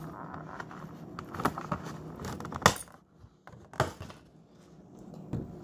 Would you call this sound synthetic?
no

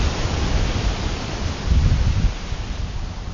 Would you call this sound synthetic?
no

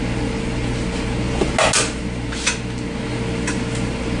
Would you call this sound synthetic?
no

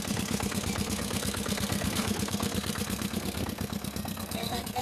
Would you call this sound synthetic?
yes